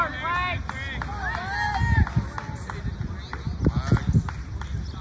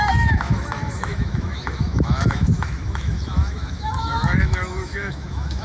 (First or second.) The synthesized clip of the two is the second